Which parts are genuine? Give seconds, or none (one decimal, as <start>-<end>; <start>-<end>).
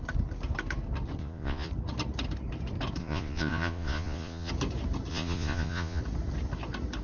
0.0-1.2; 1.7-3.0; 4.5-5.1; 6.0-7.0